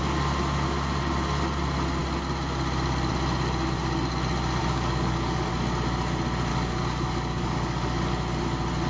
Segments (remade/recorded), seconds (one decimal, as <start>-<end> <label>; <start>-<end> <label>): 0.0-4.6 recorded; 4.6-5.5 remade; 5.5-6.5 recorded; 6.5-8.1 remade; 8.1-8.9 recorded